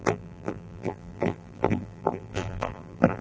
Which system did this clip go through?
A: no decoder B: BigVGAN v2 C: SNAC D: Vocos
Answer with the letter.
B